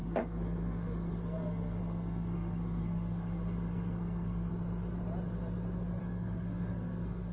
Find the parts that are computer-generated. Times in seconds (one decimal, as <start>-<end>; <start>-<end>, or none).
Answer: 0.0-4.5; 6.0-7.3